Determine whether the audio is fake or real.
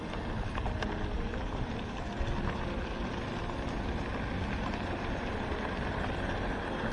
fake